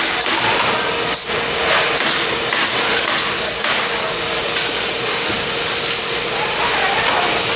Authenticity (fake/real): real